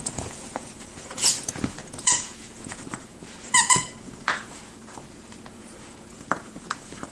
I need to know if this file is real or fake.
fake